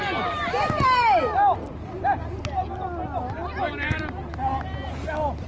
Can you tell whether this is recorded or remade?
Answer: recorded